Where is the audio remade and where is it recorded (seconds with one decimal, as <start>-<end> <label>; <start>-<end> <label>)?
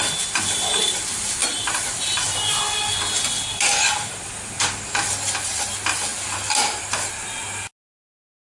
0.0-8.6 recorded